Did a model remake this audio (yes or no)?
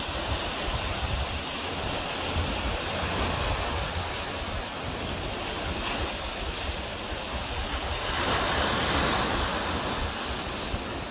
no